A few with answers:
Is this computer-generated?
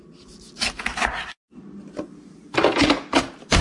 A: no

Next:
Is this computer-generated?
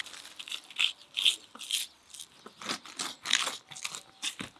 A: no